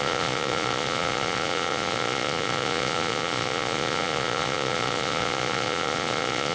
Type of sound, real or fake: fake